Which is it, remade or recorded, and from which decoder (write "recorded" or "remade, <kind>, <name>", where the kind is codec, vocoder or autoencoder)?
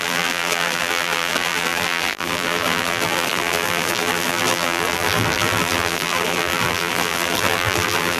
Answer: remade, vocoder, BigVGAN v2